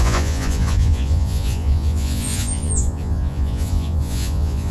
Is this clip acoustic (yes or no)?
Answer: no